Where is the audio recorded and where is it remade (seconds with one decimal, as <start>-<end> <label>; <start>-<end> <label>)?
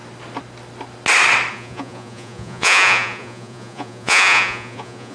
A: 0.0-1.5 recorded; 1.5-5.1 remade